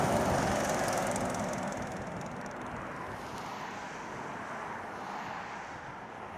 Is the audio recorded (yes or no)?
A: yes